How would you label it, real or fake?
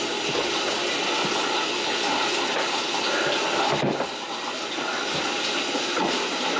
real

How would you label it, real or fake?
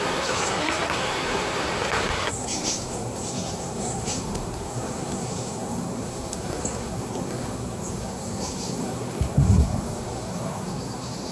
fake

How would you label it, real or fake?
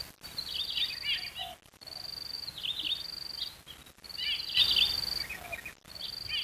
real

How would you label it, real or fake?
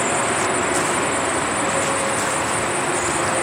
real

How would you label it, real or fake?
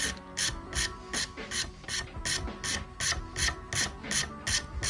real